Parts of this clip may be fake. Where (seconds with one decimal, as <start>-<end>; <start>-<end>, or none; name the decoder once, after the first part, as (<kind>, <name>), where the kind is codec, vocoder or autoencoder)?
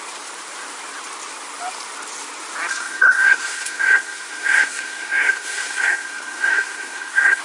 2.7-7.4 (codec, SNAC)